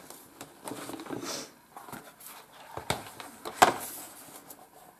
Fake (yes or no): no